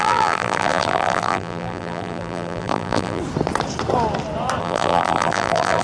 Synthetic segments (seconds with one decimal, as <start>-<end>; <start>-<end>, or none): 0.0-3.2; 4.6-5.8